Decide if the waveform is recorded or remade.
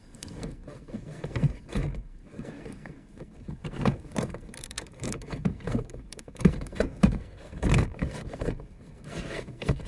remade